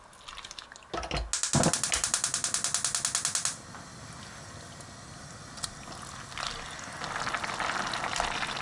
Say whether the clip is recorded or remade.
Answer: recorded